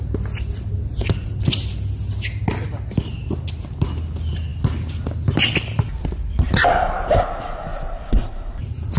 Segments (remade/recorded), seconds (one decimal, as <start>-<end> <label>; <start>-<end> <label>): 0.0-7.7 recorded; 7.7-9.0 remade